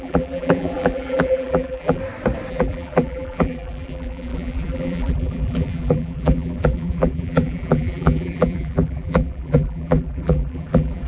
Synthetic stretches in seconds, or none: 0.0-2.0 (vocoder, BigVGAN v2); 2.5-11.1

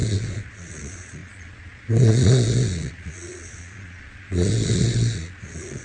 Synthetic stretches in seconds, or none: 0.0-5.8 (vocoder, Vocos)

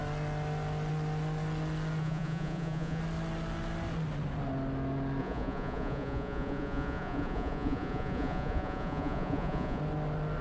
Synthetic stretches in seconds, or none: 2.0-3.0 (vocoder, Vocos); 5.2-9.8

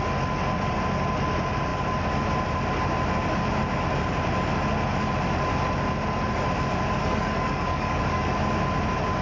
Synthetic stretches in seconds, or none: 7.0-8.3 (codec, DAC)

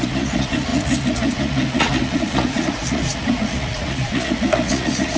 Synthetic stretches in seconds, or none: 0.0-5.2 (vocoder, Vocos)

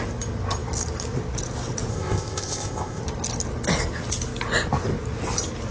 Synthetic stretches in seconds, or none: 1.9-3.0 (codec, ZipCodec)

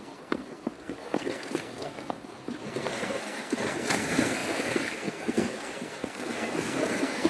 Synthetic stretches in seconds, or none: 0.0-7.3 (codec, SNAC)